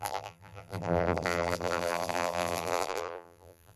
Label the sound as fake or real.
fake